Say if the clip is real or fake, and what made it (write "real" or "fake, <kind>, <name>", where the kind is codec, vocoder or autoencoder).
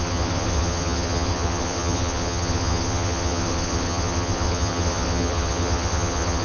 fake, vocoder, HiFi-GAN